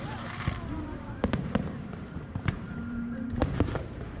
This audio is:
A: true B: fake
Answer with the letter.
B